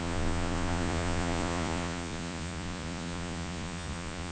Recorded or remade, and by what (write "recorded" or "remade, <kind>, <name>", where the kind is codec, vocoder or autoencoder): remade, vocoder, Vocos